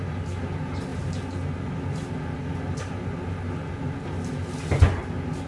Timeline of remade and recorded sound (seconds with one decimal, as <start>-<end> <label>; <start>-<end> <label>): 0.0-5.5 recorded